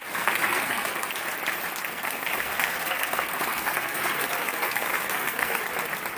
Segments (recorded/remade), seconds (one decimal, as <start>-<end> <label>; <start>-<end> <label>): 0.0-1.1 remade; 1.1-1.9 recorded; 1.9-5.6 remade; 5.6-6.2 recorded